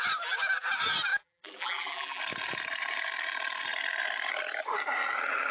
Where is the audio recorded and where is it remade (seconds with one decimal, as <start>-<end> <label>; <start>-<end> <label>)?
0.0-1.1 recorded; 1.1-2.2 remade; 2.2-5.5 recorded